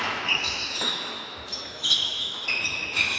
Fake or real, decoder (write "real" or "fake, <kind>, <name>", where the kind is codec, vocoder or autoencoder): fake, autoencoder, DAC-VAE